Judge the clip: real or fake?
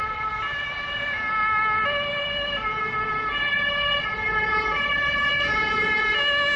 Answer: real